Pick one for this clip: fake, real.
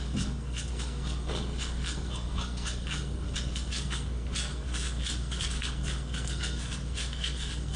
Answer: fake